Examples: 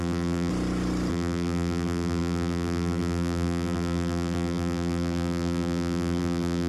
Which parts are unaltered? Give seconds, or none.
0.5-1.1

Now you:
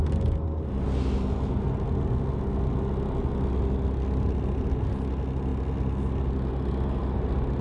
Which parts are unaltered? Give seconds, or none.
0.0-7.6

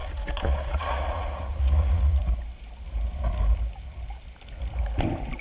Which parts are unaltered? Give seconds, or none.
2.2-5.4

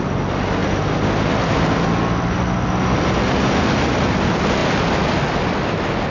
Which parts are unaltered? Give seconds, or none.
0.0-6.1

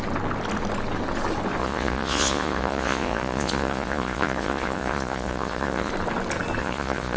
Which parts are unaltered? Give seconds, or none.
0.0-1.6; 5.9-6.6